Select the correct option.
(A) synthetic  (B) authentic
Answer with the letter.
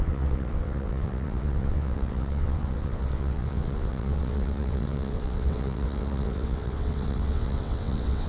A